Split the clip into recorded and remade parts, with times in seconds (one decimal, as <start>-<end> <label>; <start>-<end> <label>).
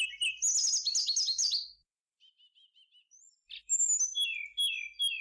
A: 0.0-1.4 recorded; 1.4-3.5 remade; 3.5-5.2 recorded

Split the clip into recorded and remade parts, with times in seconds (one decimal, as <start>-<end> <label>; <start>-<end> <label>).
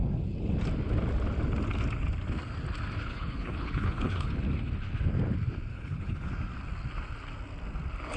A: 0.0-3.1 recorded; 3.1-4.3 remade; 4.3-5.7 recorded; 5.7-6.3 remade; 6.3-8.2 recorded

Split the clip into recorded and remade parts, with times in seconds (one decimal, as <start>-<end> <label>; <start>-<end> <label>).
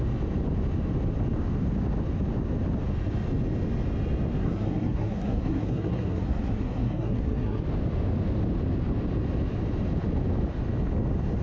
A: 0.0-4.4 recorded; 4.4-7.6 remade; 7.6-11.4 recorded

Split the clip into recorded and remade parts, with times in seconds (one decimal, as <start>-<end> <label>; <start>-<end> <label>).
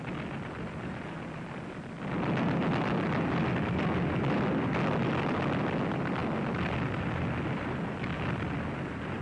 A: 0.0-9.2 recorded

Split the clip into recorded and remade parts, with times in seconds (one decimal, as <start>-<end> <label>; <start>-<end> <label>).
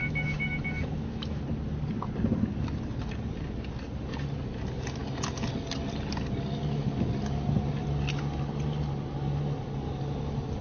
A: 0.0-1.4 remade; 1.4-10.6 recorded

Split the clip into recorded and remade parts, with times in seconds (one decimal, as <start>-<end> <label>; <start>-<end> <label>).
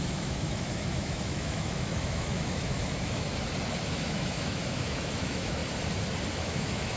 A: 0.0-3.3 remade; 3.3-3.9 recorded; 3.9-5.6 remade; 5.6-6.3 recorded; 6.3-7.0 remade